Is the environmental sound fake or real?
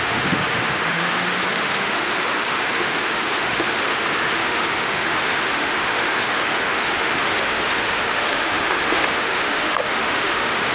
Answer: fake